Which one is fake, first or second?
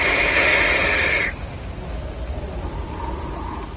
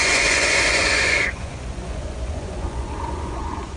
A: second